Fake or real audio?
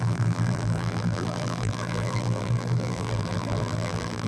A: fake